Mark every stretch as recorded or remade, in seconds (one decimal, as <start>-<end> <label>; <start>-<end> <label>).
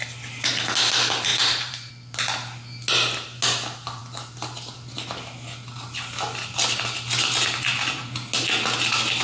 0.0-1.3 recorded; 1.3-1.9 remade; 1.9-9.2 recorded